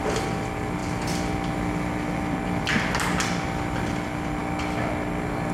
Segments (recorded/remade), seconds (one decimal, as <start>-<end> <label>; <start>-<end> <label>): 0.0-5.5 recorded